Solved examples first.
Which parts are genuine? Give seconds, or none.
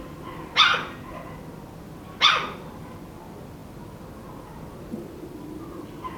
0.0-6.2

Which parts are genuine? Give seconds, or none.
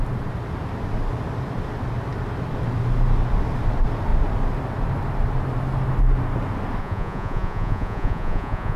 0.0-6.8